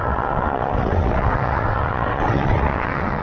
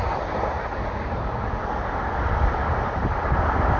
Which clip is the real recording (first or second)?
second